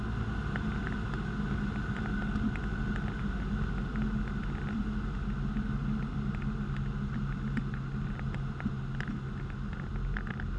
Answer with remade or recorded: recorded